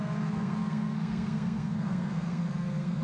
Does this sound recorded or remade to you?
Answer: remade